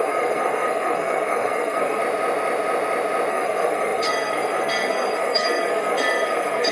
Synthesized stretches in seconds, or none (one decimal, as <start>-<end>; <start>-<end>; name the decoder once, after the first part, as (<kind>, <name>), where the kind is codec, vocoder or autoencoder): 0.0-2.0 (codec, SNAC); 3.3-6.7